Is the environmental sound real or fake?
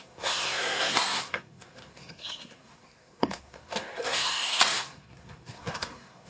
fake